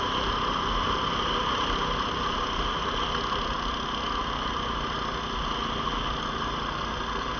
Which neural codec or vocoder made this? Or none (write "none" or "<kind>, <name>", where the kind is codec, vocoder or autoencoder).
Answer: none